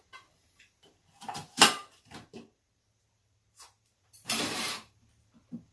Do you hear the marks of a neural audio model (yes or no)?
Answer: yes